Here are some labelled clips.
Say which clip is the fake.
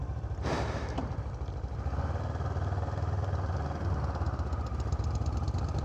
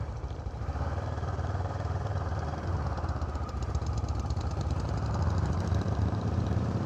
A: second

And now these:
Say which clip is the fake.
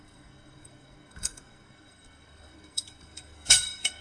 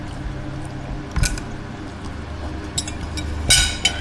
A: first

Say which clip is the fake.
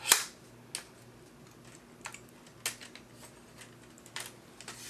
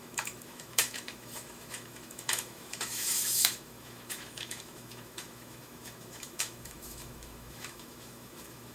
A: second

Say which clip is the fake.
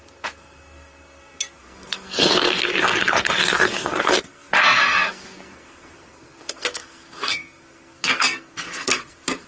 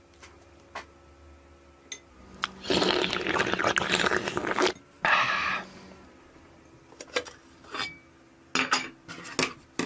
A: first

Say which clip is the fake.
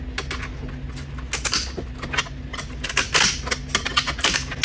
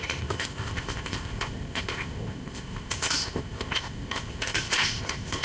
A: second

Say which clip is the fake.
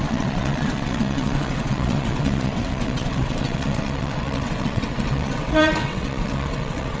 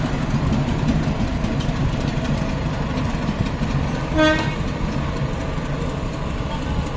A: first